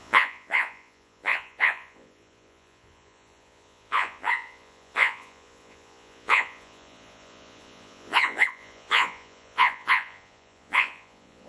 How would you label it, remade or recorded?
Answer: remade